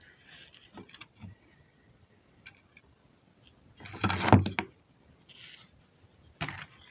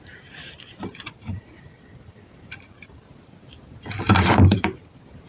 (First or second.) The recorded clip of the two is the first